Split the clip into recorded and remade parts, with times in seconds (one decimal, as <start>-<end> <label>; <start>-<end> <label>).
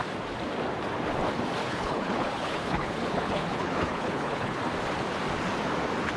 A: 0.0-1.6 recorded; 1.6-4.6 remade; 4.6-6.2 recorded